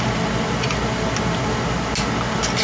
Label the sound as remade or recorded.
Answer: recorded